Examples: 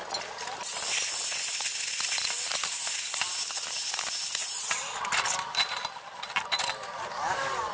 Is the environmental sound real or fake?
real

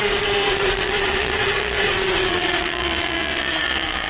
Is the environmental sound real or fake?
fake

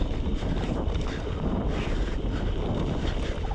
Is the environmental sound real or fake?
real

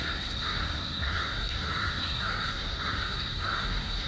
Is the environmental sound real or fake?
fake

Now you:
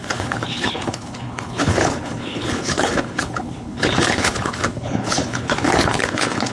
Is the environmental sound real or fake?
fake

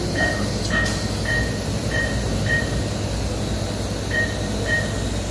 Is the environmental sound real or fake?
real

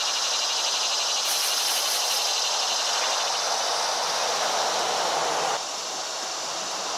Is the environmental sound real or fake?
real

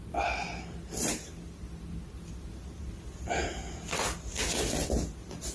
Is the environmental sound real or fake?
real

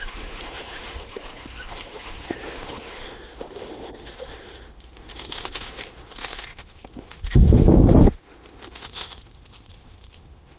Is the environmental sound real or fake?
fake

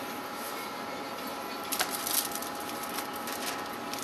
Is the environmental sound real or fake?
real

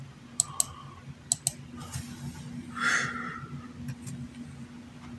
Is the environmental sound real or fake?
real